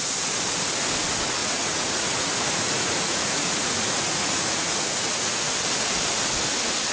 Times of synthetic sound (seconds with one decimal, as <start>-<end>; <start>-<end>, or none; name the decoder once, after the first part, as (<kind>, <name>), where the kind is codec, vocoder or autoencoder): 1.4-5.5 (vocoder, Vocos)